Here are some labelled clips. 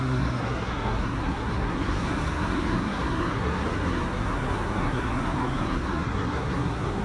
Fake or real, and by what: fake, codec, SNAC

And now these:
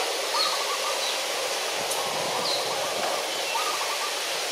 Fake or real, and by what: real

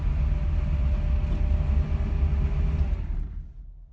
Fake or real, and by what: real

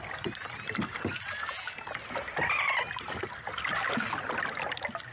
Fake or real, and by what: real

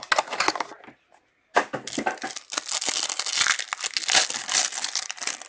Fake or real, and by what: real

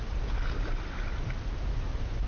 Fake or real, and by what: real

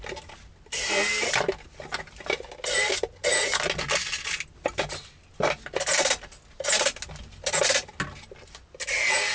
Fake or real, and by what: real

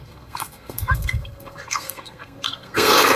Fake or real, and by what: fake, codec, SNAC